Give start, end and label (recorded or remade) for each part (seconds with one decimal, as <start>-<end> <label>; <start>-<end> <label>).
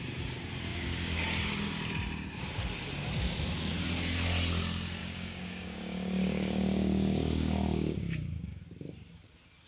0.0-0.7 recorded; 0.7-1.2 remade; 1.2-5.0 recorded; 5.0-8.6 remade; 8.6-9.7 recorded